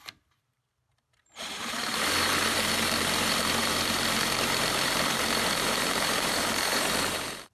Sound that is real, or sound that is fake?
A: fake